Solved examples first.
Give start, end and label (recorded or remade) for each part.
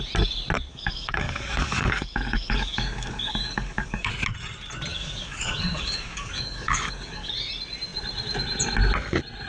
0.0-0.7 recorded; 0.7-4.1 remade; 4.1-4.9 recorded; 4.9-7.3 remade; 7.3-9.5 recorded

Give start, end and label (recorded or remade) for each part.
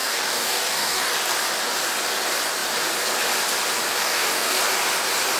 0.0-1.1 remade; 1.1-3.9 recorded; 3.9-4.6 remade; 4.6-5.4 recorded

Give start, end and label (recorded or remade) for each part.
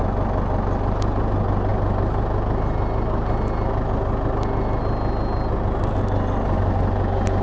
0.0-7.4 recorded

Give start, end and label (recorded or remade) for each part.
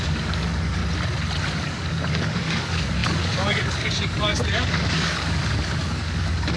0.0-0.8 remade; 0.8-1.4 recorded; 1.4-6.6 remade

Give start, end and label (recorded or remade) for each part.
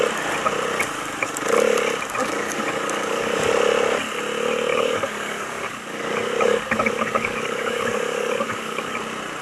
0.0-2.2 recorded; 2.2-3.5 remade; 3.5-4.7 recorded; 4.7-9.0 remade; 9.0-9.4 recorded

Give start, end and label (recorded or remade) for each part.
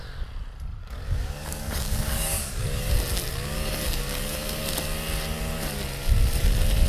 0.0-0.8 recorded; 0.8-2.9 remade; 2.9-3.3 recorded; 3.3-4.6 remade; 4.6-6.9 recorded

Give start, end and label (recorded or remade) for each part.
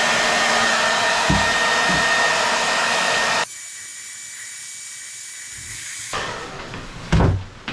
0.0-2.8 recorded; 2.8-3.3 remade; 3.3-5.7 recorded; 5.7-7.2 remade; 7.2-7.7 recorded